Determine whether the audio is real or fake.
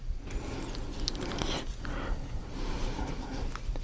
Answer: real